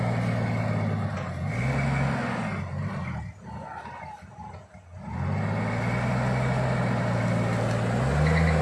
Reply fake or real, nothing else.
real